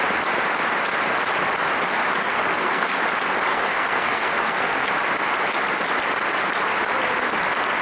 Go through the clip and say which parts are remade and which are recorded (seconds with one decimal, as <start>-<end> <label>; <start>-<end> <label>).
0.0-2.2 recorded; 2.2-3.0 remade; 3.0-3.5 recorded; 3.5-4.9 remade; 4.9-7.8 recorded